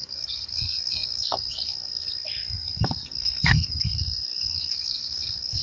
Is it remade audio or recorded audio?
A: remade